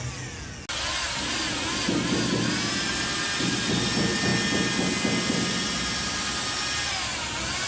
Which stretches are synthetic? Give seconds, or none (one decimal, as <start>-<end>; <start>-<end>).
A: none